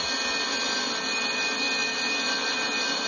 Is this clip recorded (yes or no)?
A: yes